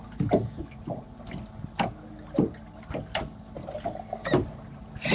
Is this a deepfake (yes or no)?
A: no